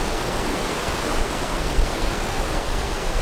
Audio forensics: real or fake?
fake